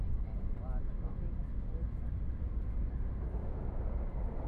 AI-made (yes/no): yes